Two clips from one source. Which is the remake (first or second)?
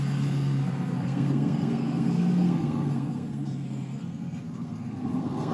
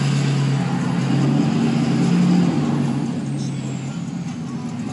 first